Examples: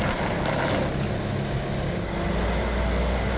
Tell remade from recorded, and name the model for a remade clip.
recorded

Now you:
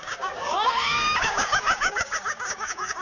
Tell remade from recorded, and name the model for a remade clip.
remade, codec, DAC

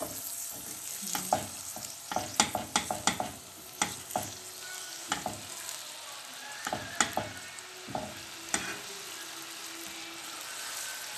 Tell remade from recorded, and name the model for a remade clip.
recorded